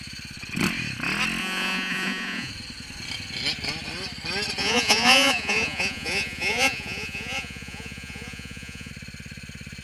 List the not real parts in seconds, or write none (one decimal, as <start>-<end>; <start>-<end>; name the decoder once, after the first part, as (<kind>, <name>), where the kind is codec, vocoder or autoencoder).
1.4-2.5 (vocoder, Vocos); 4.6-8.9